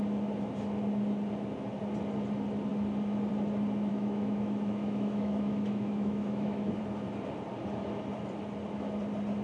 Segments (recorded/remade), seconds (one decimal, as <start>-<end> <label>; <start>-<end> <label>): 0.0-3.9 recorded; 3.9-6.8 remade; 6.8-9.4 recorded